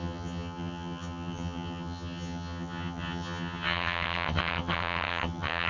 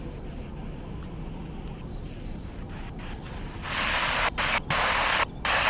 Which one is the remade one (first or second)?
first